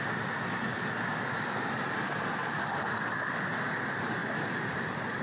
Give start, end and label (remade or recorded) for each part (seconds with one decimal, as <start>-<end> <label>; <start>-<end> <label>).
0.0-0.7 recorded; 0.7-1.7 remade; 1.7-2.4 recorded; 2.4-3.2 remade; 3.2-4.2 recorded; 4.2-4.8 remade; 4.8-5.2 recorded